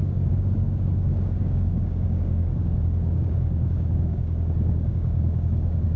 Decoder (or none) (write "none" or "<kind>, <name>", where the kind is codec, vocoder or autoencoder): codec, DAC